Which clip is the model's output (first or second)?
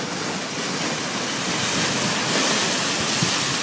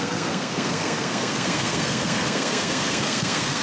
second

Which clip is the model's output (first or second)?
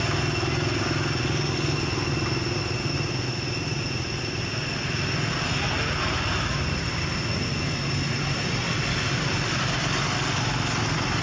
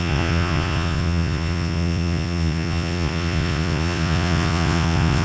second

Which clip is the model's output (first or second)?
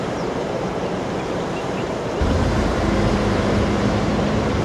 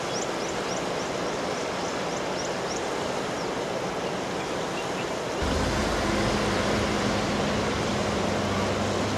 first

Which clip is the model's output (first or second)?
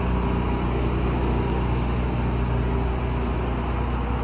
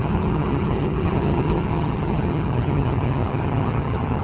second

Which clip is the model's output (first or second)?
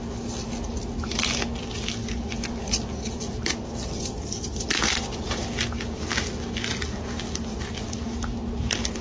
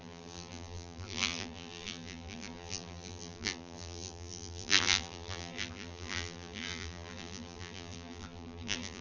second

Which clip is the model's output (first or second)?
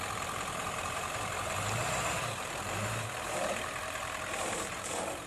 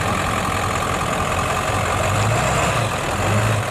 first